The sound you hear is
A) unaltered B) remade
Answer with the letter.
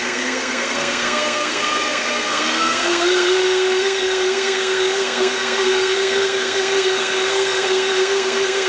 B